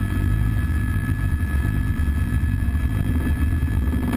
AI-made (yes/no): yes